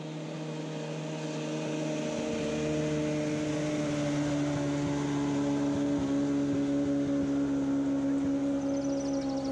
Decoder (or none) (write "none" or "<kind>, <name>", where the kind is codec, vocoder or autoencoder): none